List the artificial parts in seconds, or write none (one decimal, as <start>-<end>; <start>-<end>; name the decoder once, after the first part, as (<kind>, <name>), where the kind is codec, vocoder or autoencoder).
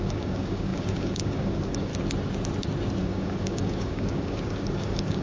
0.0-1.9 (codec, DAC); 3.0-5.2